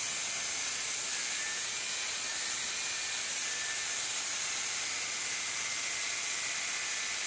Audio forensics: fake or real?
real